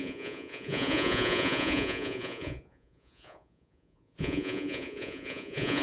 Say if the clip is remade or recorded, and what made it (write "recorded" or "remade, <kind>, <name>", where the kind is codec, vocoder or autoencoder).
remade, vocoder, Vocos